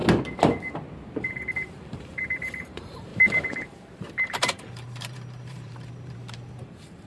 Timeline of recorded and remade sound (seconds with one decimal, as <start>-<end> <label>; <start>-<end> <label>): 0.0-1.5 recorded; 1.5-7.1 remade